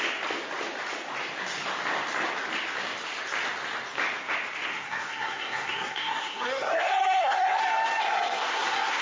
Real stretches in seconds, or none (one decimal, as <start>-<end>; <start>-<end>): 0.0-4.7; 7.6-8.0